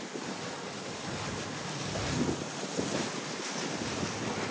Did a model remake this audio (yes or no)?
no